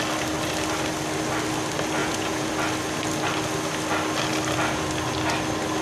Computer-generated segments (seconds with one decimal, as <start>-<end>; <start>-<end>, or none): 2.0-2.5